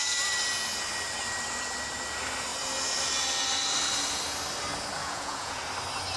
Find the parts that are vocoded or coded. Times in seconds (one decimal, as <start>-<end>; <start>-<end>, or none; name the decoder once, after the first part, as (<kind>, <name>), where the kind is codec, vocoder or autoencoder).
5.0-5.6 (vocoder, Vocos)